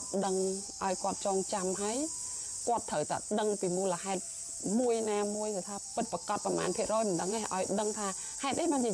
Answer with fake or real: fake